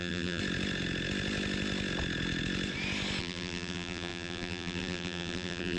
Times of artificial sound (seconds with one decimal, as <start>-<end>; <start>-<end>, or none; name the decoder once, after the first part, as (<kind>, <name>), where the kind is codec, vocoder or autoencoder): 0.0-0.4 (vocoder, BigVGAN v2); 3.2-5.8